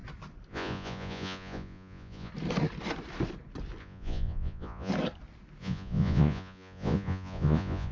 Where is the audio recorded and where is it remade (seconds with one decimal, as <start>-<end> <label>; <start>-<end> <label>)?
0.0-0.5 recorded; 0.5-2.3 remade; 2.3-3.8 recorded; 3.8-4.9 remade; 4.9-5.6 recorded; 5.6-7.9 remade